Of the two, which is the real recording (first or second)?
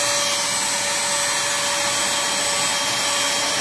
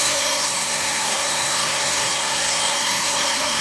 first